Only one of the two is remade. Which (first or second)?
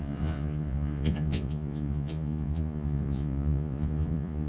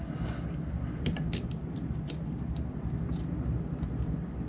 first